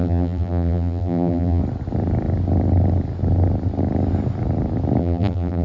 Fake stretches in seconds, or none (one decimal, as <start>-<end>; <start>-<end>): 0.0-1.6; 5.0-5.6